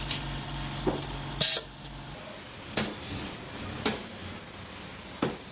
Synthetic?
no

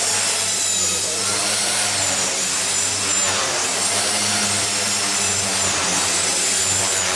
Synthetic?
no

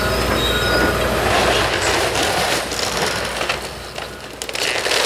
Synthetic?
no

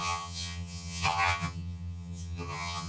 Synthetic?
yes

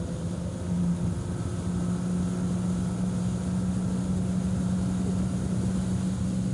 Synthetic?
no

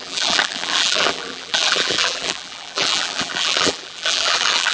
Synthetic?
yes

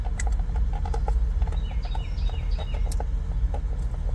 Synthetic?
no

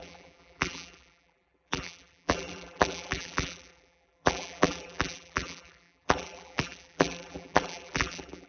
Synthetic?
yes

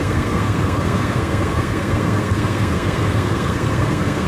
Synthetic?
yes